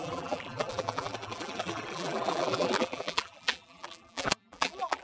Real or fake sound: fake